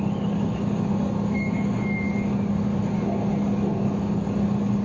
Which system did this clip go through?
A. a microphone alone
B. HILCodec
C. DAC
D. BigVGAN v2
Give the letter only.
C